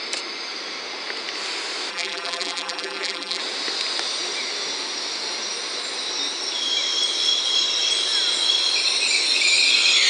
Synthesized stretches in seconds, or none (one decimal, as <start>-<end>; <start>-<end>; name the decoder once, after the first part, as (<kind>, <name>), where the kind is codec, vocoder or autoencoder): 1.9-3.4 (vocoder, BigVGAN v2)